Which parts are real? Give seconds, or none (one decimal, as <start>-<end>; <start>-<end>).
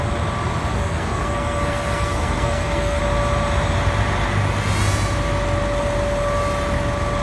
0.0-0.7; 3.0-7.2